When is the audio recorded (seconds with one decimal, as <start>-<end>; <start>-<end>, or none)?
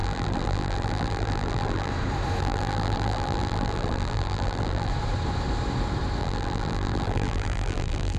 1.9-2.4; 4.9-6.2